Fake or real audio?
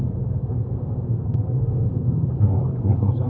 fake